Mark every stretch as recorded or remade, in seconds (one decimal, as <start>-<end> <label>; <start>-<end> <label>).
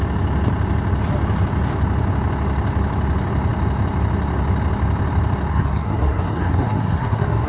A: 0.0-5.5 recorded; 5.5-7.5 remade